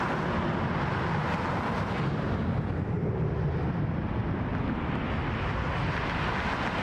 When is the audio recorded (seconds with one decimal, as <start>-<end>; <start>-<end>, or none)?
0.0-4.5; 5.1-6.8